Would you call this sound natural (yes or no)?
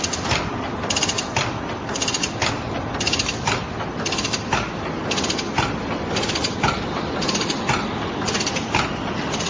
yes